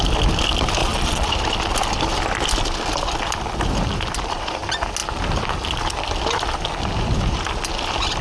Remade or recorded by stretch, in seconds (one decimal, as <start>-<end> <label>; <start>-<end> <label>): 0.0-0.8 recorded; 0.8-1.3 remade; 1.3-8.2 recorded